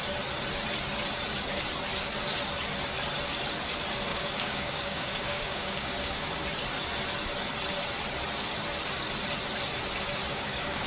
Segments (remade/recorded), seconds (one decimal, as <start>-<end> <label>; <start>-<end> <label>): 0.0-4.1 recorded; 4.1-6.4 remade; 6.4-10.3 recorded; 10.3-10.9 remade